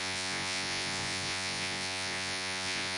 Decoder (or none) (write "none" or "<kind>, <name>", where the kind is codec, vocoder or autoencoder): vocoder, Vocos